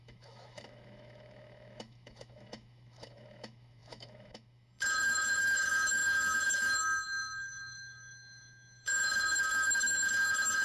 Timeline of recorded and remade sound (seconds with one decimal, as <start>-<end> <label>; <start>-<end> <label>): 0.0-10.6 remade